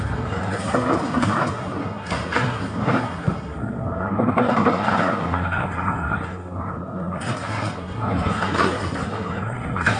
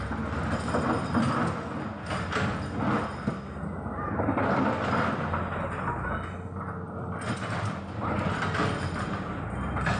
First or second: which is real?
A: second